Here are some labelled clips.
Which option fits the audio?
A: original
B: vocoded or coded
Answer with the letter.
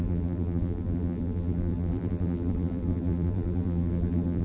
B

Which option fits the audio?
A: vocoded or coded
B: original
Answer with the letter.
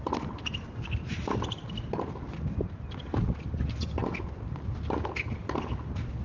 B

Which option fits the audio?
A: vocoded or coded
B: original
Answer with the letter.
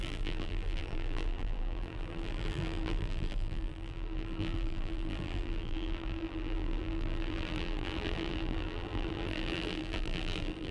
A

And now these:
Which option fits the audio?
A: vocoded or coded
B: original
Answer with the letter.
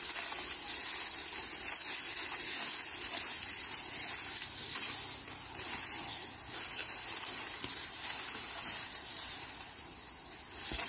B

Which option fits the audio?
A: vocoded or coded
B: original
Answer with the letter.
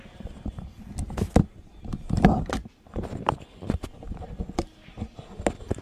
B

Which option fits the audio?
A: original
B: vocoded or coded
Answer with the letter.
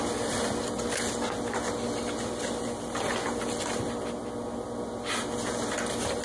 A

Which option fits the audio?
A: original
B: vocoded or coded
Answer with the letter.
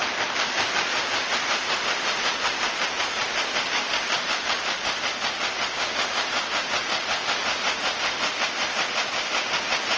B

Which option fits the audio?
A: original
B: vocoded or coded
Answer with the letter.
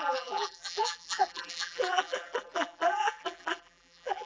B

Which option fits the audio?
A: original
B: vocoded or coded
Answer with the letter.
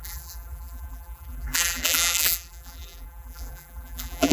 B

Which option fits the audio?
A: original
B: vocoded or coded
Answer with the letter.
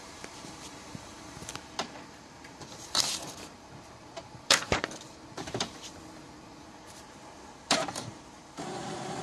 B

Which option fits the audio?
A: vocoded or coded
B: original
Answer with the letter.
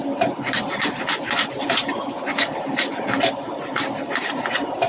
A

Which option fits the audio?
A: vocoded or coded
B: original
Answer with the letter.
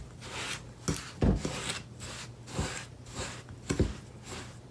B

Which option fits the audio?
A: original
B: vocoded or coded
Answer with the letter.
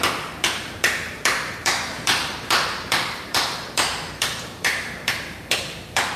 B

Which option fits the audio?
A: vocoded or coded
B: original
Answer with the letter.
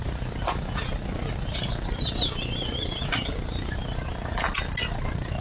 B